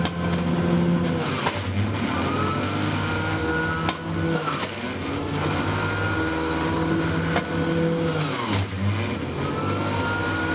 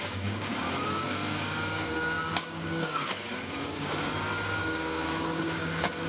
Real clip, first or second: first